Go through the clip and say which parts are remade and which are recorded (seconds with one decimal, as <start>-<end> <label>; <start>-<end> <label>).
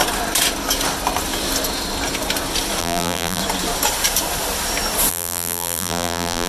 0.0-2.8 recorded; 2.8-3.4 remade; 3.4-5.1 recorded; 5.1-6.5 remade